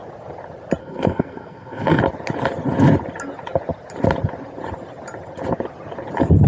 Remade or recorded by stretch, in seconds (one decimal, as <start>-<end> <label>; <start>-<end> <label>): 0.0-0.8 recorded; 0.8-2.0 remade; 2.0-6.5 recorded